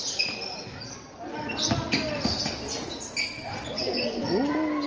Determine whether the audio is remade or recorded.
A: recorded